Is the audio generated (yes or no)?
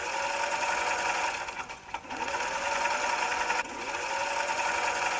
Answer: yes